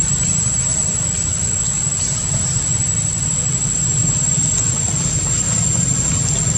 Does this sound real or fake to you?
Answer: real